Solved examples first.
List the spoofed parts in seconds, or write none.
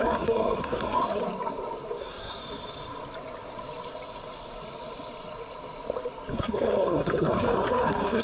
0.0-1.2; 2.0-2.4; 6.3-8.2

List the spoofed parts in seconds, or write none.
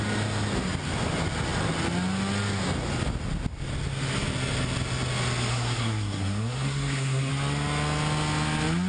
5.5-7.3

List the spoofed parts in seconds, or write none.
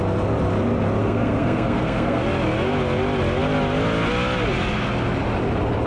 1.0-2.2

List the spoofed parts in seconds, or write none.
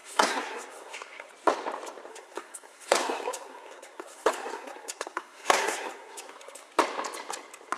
0.0-1.3; 2.1-6.7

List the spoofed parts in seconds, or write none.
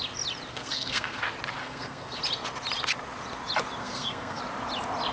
0.5-1.2; 1.6-2.2; 3.8-4.4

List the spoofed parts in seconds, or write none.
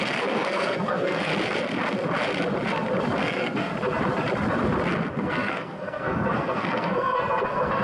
0.0-1.3; 3.2-3.7; 5.1-7.8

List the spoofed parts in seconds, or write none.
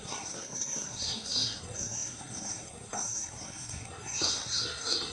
0.0-5.1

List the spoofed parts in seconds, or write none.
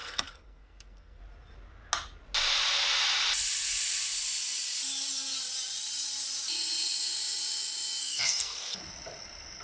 0.0-1.2; 8.0-8.8